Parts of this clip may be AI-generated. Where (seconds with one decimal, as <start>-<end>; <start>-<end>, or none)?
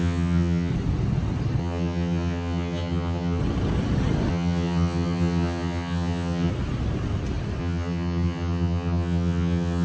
0.0-0.7; 1.6-3.4; 4.3-6.5; 7.6-9.8